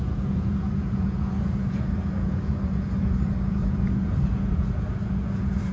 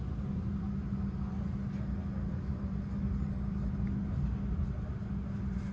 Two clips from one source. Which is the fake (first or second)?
first